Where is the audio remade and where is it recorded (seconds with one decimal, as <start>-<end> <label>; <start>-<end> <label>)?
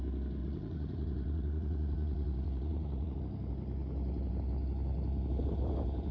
0.0-0.4 recorded; 0.4-3.2 remade; 3.2-6.1 recorded